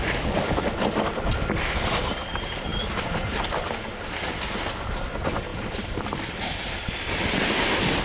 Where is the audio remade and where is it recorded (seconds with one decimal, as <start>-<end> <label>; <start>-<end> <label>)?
0.0-5.5 recorded; 5.5-7.2 remade; 7.2-8.0 recorded